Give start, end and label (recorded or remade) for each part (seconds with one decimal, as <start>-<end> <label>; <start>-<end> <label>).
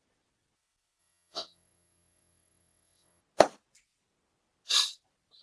0.0-1.0 recorded; 1.0-3.2 remade; 3.2-5.4 recorded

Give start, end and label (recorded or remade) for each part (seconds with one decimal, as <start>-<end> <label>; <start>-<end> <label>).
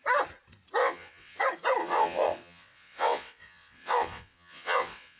0.0-0.8 recorded; 0.8-1.4 remade; 1.4-1.8 recorded; 1.8-5.2 remade